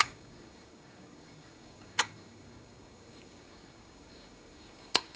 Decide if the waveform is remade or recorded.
remade